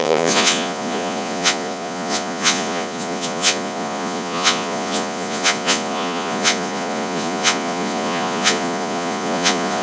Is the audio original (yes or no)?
no